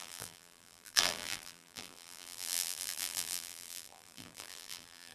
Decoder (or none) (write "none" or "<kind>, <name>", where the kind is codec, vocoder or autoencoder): vocoder, BigVGAN v2